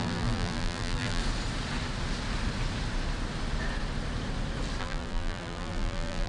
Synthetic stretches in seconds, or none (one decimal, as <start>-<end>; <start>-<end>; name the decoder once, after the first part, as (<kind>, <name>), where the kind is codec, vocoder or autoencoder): 0.0-1.2 (vocoder, BigVGAN v2); 4.8-6.3

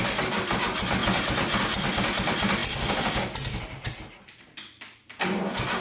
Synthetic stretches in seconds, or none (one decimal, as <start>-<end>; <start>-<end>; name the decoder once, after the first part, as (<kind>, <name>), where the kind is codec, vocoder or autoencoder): none